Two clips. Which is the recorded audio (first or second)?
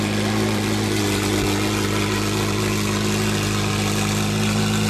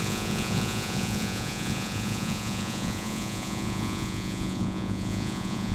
first